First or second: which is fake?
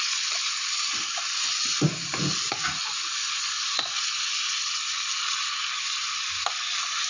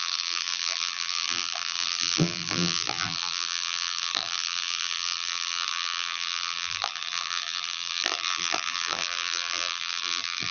second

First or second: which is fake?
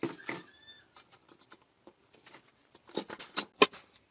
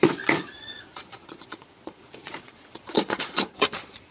second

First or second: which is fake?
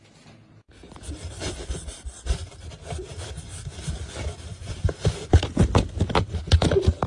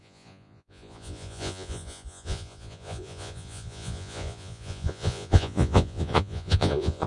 second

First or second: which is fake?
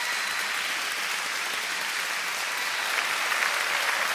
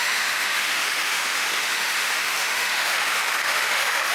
second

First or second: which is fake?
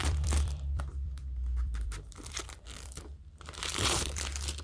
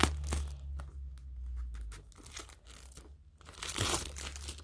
first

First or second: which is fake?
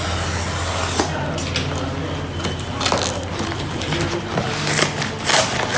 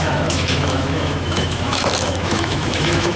second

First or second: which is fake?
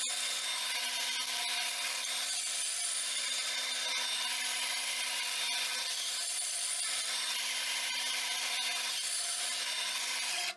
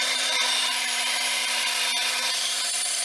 second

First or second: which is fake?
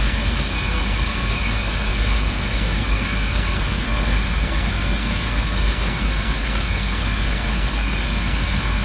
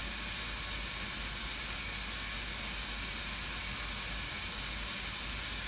first